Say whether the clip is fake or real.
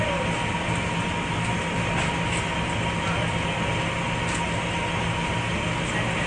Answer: real